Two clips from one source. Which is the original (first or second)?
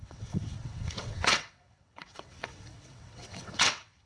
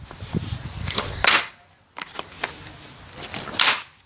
second